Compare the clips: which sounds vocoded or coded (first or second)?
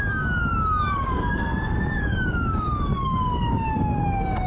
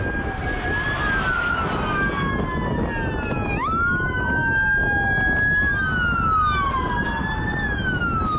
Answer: first